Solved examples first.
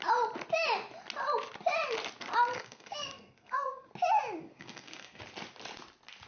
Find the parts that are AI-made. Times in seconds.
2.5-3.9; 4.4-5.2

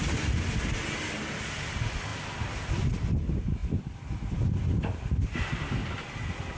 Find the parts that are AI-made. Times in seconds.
none

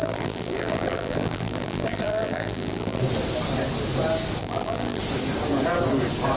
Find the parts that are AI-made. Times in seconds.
0.0-3.0; 4.4-5.0

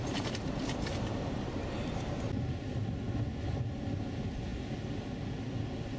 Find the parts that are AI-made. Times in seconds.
none

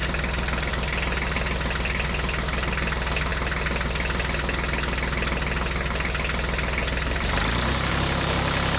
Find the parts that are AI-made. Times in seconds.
none

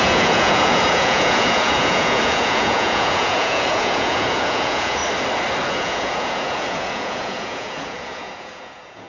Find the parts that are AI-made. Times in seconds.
0.0-5.0; 5.7-9.1

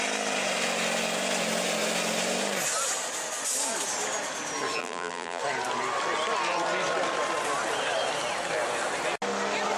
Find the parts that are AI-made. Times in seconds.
4.8-5.4

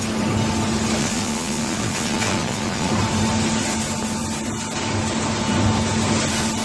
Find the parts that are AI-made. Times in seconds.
1.0-2.9